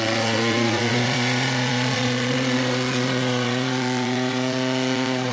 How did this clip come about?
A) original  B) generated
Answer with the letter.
B